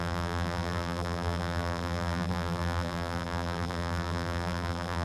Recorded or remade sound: remade